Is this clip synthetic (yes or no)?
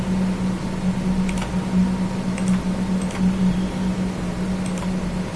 no